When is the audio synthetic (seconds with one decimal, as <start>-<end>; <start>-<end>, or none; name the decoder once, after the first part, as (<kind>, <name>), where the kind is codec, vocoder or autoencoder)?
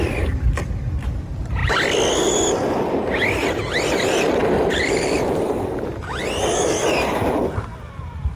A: 4.4-6.0 (vocoder, BigVGAN v2)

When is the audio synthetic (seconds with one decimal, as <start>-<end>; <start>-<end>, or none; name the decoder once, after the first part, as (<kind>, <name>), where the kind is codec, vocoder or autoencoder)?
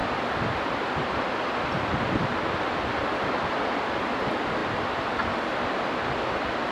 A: 0.0-2.0 (vocoder, BigVGAN v2); 4.6-5.1